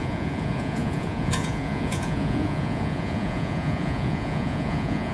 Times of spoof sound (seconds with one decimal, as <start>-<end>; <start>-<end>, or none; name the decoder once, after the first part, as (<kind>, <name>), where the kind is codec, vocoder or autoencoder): 0.0-5.1 (vocoder, Vocos)